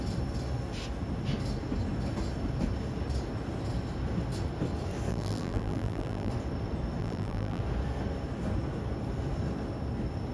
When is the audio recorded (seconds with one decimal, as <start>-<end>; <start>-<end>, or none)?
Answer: 0.0-5.1; 6.3-7.0; 7.6-10.3